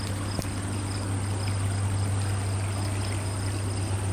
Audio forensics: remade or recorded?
recorded